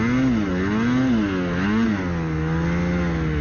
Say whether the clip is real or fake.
real